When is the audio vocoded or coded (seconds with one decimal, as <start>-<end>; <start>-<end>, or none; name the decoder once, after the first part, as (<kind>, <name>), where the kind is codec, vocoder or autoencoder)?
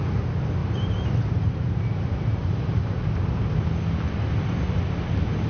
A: 0.6-3.5 (vocoder, BigVGAN v2)